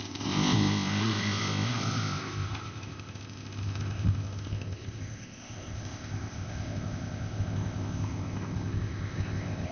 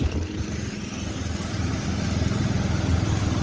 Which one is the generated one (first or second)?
first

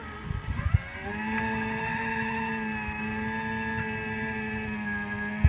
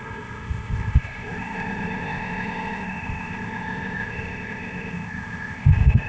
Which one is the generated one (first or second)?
second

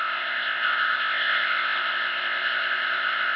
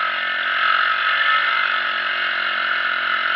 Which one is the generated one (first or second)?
first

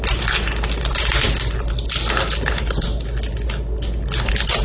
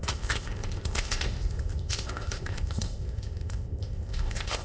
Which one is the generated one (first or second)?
second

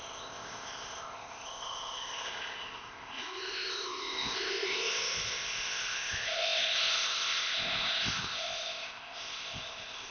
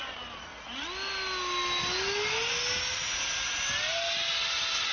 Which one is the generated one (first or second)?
first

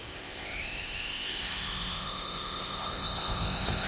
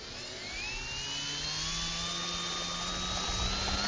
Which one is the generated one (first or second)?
first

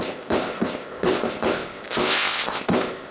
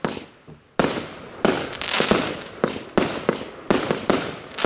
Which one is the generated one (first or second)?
first